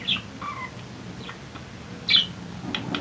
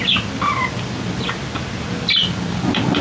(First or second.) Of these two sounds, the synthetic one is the second